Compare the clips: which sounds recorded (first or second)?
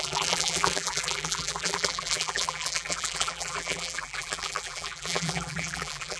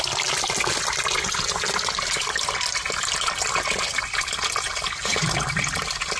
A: second